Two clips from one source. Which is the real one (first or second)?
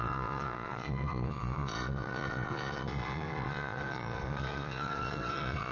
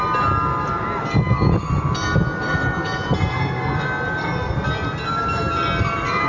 second